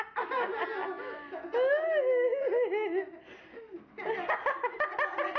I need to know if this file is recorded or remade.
recorded